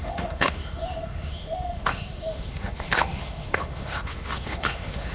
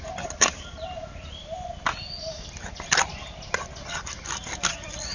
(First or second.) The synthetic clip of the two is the first